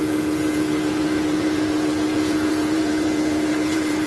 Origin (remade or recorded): remade